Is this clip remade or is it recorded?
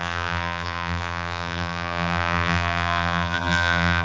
remade